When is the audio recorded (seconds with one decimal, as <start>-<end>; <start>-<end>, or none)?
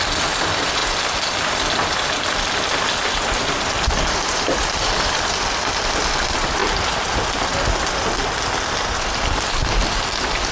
0.8-4.1; 6.6-8.7